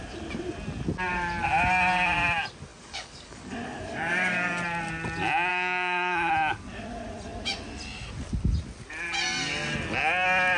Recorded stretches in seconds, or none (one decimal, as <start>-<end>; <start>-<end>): 0.0-2.7; 4.6-5.5; 6.3-10.6